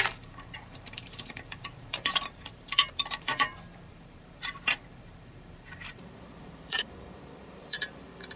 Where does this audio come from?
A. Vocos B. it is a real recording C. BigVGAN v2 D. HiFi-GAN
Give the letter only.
C